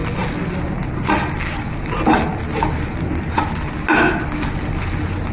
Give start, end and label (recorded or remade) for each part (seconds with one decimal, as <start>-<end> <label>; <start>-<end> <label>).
0.0-5.3 recorded